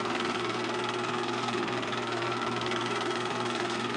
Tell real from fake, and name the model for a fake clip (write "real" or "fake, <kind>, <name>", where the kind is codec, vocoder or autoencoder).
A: fake, codec, SNAC